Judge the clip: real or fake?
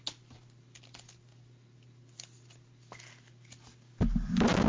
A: real